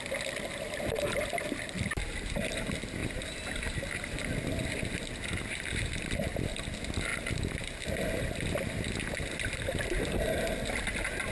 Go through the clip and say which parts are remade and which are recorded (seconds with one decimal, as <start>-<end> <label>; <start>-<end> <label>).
0.0-3.0 recorded; 3.0-4.3 remade; 4.3-7.1 recorded; 7.1-8.9 remade; 8.9-11.3 recorded